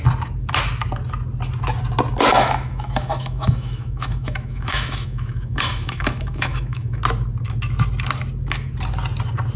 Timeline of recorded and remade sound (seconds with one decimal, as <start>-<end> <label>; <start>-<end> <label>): 0.0-2.3 recorded; 2.3-7.0 remade; 7.0-9.6 recorded